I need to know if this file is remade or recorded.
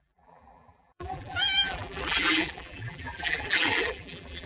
remade